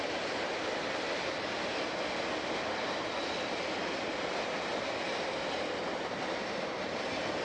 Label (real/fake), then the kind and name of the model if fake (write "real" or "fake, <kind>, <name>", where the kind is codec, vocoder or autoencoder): real